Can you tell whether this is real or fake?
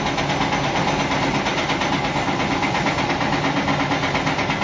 real